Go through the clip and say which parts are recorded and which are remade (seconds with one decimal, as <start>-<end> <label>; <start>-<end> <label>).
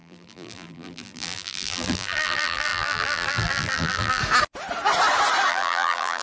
0.0-4.2 remade; 4.2-5.5 recorded; 5.5-6.2 remade